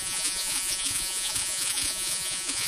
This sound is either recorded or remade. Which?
remade